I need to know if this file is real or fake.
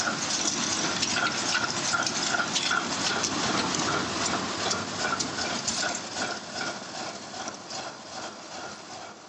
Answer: real